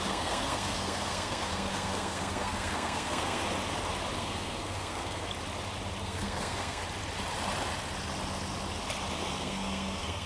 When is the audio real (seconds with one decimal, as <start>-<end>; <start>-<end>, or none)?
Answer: 3.4-4.2; 5.3-6.0; 6.8-9.3